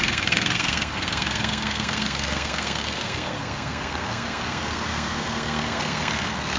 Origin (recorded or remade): remade